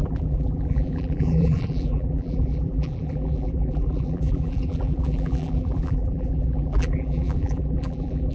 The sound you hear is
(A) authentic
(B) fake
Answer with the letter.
B